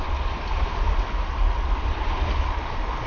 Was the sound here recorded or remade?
recorded